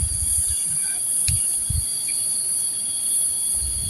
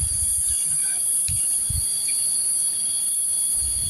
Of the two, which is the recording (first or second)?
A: second